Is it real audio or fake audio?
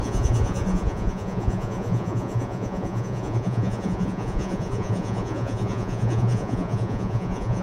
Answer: fake